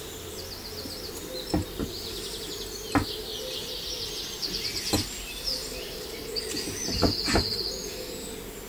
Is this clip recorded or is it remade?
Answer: recorded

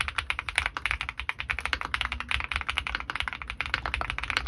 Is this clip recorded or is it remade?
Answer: recorded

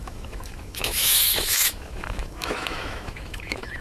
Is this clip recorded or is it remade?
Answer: remade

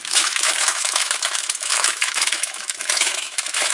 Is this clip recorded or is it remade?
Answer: remade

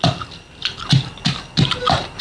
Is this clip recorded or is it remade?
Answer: recorded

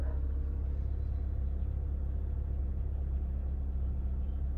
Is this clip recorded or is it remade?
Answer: recorded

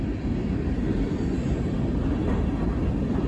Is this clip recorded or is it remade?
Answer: recorded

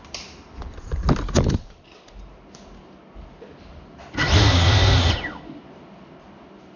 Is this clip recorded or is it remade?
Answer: recorded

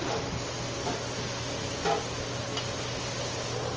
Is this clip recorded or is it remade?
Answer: recorded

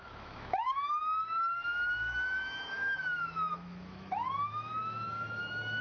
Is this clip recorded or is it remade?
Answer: remade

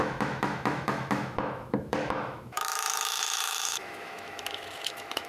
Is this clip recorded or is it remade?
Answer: remade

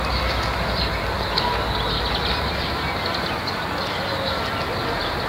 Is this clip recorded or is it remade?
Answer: recorded